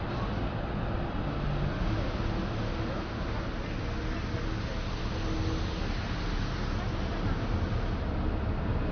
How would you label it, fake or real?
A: real